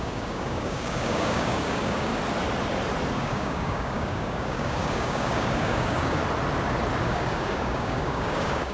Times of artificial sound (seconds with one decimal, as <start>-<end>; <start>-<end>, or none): 0.0-2.1; 3.1-6.2; 7.0-8.7